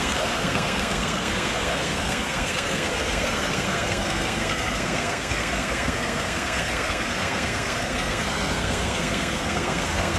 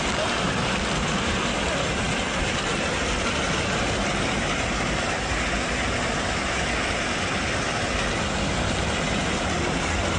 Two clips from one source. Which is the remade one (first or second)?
first